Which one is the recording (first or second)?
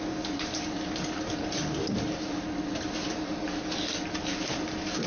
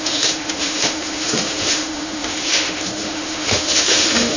first